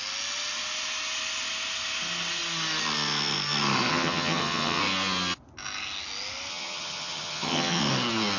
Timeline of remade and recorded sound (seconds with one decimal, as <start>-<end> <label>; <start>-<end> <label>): 0.0-3.9 recorded; 3.9-4.8 remade; 4.8-6.5 recorded; 6.5-7.8 remade; 7.8-8.4 recorded